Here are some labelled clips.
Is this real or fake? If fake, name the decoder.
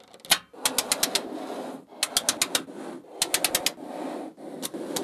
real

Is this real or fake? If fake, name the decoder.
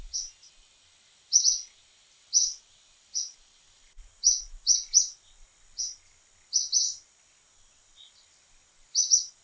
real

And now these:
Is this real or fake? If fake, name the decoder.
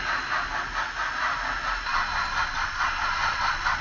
real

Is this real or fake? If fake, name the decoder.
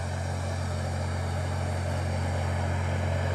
real